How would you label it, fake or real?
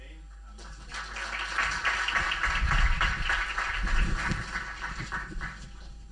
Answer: real